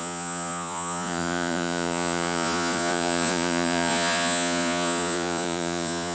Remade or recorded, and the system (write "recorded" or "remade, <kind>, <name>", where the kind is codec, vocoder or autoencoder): remade, vocoder, Vocos